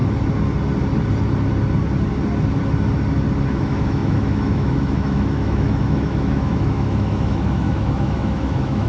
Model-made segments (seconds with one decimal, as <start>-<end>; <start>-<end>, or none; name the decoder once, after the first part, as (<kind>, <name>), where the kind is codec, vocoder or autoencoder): 3.5-8.9 (autoencoder, DAC-VAE)